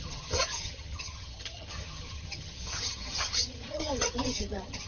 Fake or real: fake